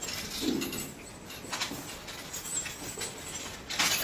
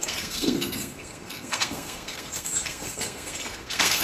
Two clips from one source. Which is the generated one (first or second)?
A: second